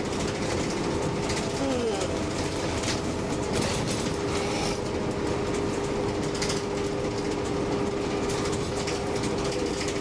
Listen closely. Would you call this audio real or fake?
real